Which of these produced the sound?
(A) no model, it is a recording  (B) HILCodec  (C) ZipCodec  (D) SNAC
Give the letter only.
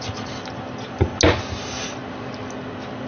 A